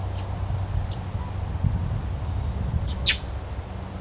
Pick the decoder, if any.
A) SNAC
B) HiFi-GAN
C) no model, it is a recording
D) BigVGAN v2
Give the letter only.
C